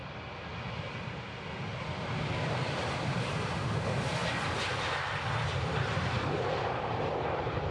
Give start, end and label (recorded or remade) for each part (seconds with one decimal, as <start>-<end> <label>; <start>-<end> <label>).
0.0-2.0 recorded; 2.0-4.2 remade; 4.2-5.4 recorded; 5.4-7.7 remade